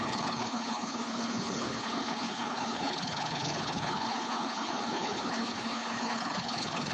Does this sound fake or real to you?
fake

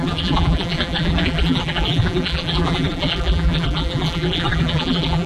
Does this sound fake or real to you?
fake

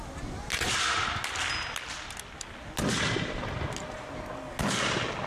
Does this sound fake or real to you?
real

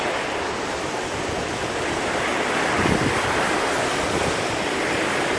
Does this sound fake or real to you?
real